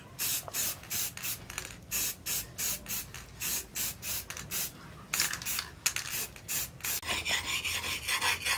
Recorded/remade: recorded